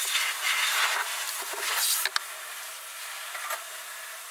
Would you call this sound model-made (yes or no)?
no